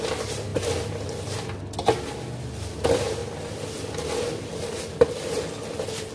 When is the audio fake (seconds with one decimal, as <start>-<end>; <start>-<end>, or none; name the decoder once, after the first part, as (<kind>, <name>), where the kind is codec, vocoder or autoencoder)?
none